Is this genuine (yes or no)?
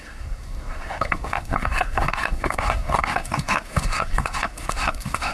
no